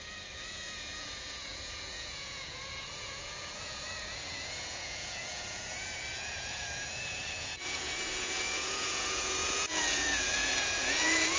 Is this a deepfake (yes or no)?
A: yes